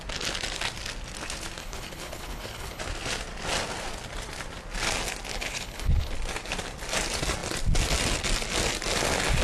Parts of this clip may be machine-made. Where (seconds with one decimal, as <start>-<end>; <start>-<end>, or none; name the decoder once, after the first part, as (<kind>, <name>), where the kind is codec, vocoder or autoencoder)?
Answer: 1.6-2.8 (codec, HILCodec); 5.3-6.1